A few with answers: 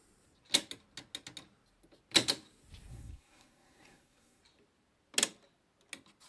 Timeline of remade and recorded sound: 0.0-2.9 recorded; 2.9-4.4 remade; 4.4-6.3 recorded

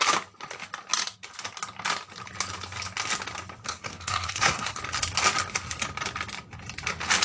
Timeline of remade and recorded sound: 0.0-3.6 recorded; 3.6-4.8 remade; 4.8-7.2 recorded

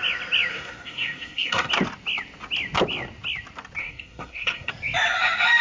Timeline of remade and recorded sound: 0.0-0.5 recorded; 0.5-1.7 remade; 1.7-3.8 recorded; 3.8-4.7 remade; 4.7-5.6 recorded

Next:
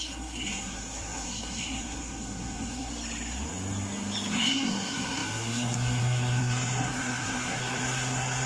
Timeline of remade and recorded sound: 0.0-2.9 remade; 2.9-4.3 recorded; 4.3-8.5 remade